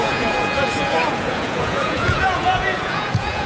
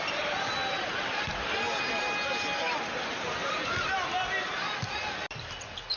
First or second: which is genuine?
second